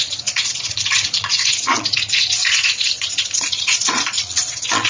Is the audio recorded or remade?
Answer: remade